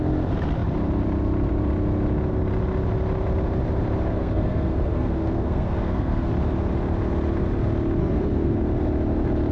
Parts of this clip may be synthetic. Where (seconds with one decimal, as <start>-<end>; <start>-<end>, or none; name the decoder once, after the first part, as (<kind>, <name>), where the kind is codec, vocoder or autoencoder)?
4.1-6.3 (codec, SNAC); 8.0-8.6